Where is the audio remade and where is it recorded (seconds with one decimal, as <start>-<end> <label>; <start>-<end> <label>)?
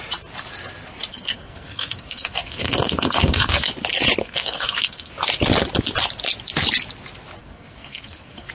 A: 0.0-1.1 recorded; 1.1-3.7 remade; 3.7-4.2 recorded; 4.2-5.1 remade; 5.1-7.4 recorded; 7.4-8.5 remade